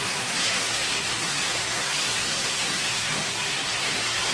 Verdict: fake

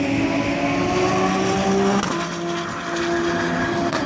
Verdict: real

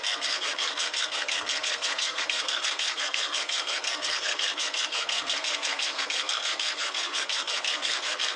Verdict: fake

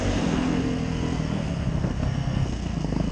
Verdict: fake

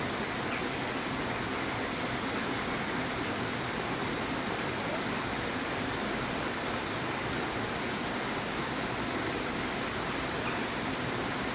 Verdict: real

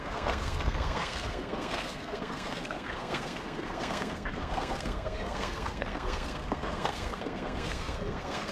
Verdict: fake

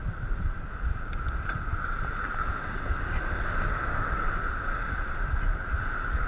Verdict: real